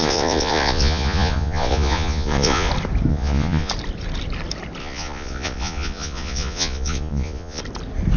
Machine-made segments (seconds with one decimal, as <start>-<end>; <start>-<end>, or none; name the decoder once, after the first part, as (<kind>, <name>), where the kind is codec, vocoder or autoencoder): 0.0-2.7 (vocoder, Vocos); 3.1-3.7; 4.8-7.6